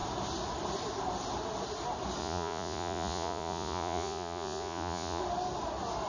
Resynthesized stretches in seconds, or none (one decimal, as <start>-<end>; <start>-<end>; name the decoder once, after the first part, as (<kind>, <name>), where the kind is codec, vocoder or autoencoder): 2.2-5.2 (vocoder, Vocos)